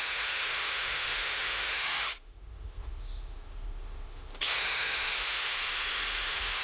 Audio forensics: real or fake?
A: fake